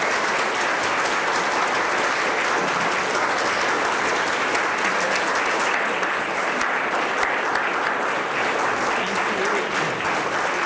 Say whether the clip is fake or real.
real